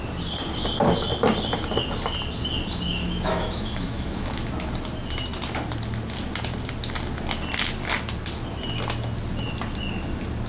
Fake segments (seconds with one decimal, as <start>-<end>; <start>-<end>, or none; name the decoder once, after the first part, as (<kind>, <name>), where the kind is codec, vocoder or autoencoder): 3.0-4.5 (autoencoder, DAC-VAE)